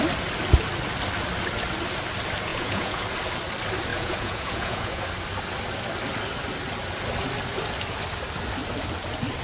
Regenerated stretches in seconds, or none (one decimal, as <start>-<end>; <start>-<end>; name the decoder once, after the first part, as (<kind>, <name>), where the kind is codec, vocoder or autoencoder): 2.5-3.0 (vocoder, Vocos); 3.9-5.0

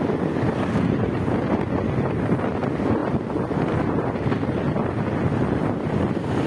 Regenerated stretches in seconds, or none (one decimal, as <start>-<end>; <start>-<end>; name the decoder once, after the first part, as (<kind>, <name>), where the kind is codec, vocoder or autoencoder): none

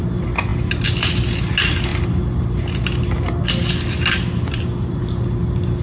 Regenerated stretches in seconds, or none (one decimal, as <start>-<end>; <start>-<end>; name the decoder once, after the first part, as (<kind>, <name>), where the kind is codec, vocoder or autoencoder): none

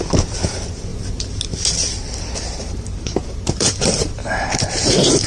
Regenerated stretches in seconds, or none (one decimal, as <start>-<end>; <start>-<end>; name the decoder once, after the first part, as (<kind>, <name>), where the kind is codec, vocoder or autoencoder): 0.9-1.4 (vocoder, BigVGAN v2); 2.6-5.3